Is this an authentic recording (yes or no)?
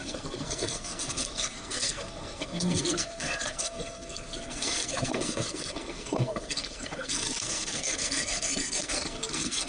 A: no